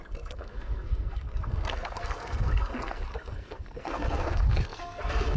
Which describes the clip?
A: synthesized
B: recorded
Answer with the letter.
A